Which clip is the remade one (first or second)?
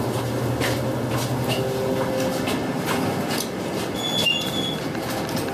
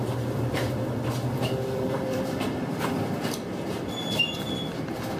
second